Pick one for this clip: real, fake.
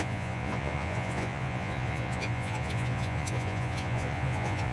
fake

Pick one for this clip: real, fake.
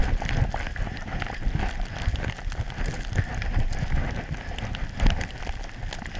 real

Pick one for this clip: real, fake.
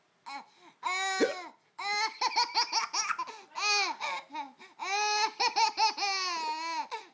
real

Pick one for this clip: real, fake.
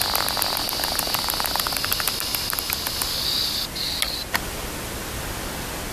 real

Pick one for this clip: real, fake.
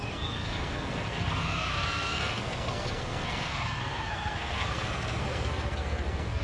fake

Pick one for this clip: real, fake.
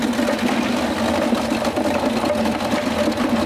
real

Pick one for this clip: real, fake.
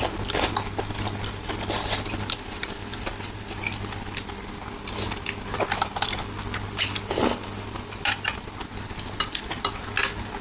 real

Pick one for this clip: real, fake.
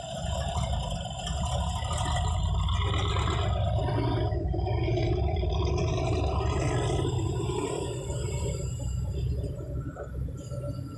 real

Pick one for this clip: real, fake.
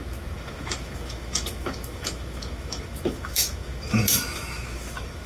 fake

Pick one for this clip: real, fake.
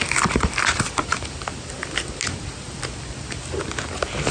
fake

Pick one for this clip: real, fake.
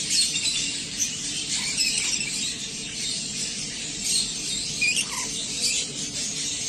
fake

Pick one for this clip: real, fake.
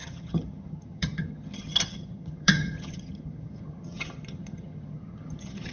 fake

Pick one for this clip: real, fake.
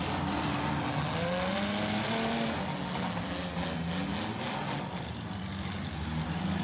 real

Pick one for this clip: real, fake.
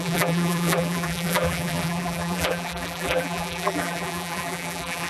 fake